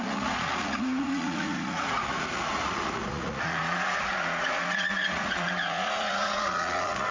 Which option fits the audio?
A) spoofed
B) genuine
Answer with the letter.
A